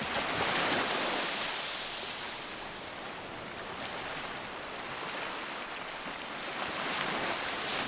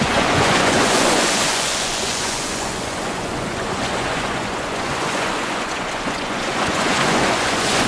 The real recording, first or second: first